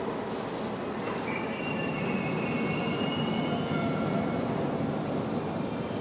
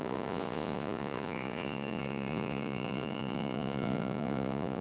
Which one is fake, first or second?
second